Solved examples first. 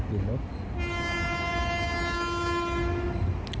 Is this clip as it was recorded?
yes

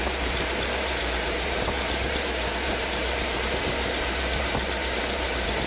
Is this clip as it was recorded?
no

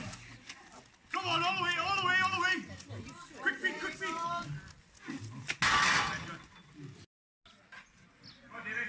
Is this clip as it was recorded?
yes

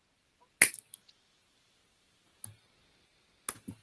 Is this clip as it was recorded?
yes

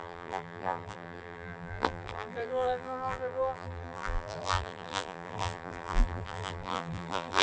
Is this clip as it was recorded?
no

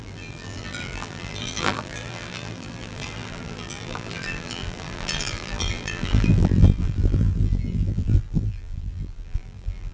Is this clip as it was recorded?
no